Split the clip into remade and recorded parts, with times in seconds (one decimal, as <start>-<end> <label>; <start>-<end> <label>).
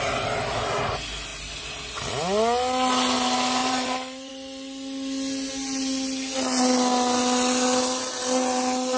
0.0-3.6 recorded; 3.6-4.3 remade; 4.3-9.0 recorded